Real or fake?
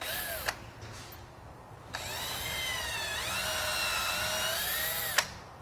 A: real